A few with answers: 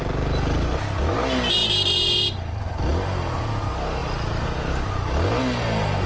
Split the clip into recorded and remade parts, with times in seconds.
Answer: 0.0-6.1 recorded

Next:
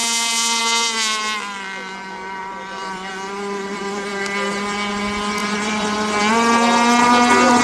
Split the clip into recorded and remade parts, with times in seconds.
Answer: 0.0-2.4 recorded; 2.4-3.1 remade; 3.1-5.4 recorded; 5.4-6.2 remade; 6.2-7.6 recorded

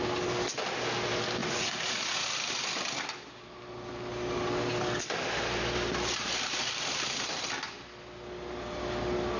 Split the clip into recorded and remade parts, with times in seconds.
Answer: 0.0-1.4 recorded; 1.4-2.3 remade; 2.3-9.4 recorded

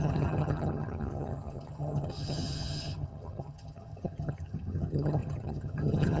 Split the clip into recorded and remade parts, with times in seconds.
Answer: 0.0-6.2 remade

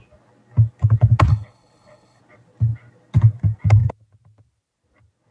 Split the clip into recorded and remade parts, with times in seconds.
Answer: 0.0-1.3 recorded; 1.3-2.2 remade; 2.2-5.3 recorded

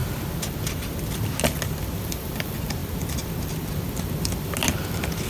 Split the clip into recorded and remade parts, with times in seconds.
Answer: 0.0-5.3 recorded

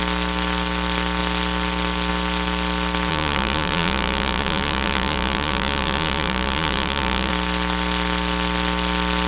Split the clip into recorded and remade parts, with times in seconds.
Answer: 0.0-3.1 recorded; 3.1-7.3 remade; 7.3-9.3 recorded

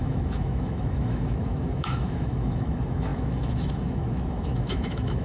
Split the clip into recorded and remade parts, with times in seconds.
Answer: 0.0-5.2 remade